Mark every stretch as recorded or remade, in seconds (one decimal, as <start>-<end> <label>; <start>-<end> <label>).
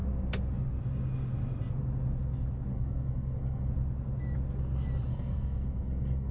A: 0.0-2.7 recorded; 2.7-3.7 remade; 3.7-5.1 recorded; 5.1-6.3 remade